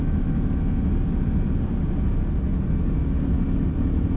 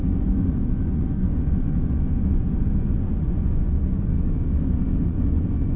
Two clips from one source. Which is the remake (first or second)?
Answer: second